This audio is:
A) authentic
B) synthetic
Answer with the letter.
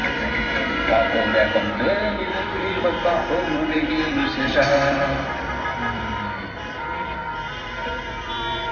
B